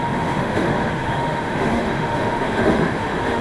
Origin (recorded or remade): remade